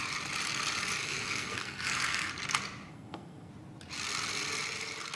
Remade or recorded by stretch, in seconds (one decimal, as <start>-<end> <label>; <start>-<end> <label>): 0.0-1.0 recorded; 1.0-2.3 remade; 2.3-2.9 recorded; 2.9-3.5 remade; 3.5-5.2 recorded